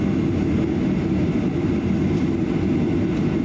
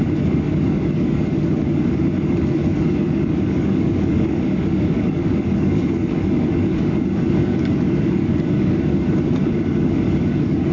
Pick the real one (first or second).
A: first